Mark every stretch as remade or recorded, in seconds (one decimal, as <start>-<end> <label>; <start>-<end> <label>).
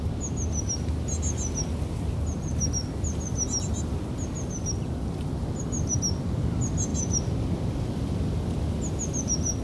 0.0-9.6 recorded